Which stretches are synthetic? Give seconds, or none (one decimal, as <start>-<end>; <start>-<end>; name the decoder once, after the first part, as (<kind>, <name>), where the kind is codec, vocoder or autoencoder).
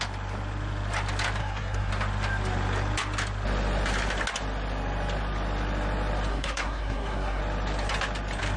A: 1.4-1.9 (codec, SNAC); 6.3-7.4